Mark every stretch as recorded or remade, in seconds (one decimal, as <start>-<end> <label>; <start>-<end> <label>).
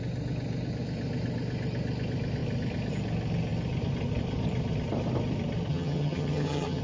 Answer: 0.0-5.7 recorded; 5.7-6.8 remade